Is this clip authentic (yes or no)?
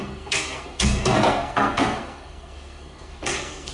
no